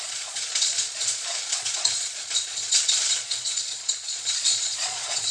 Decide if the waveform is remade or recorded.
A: remade